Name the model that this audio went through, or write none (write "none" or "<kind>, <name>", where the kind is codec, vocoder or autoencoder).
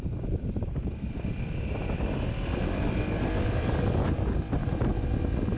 none